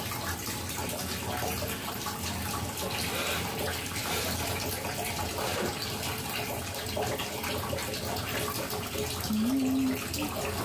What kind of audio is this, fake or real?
real